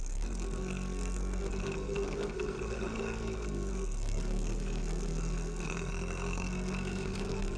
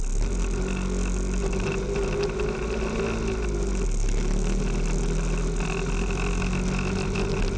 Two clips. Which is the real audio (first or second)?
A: second